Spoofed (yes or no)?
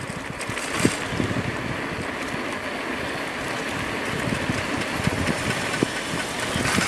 no